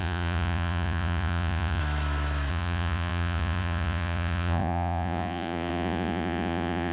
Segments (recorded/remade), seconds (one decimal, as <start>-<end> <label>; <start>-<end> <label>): 0.0-1.8 remade; 1.8-2.5 recorded; 2.5-6.9 remade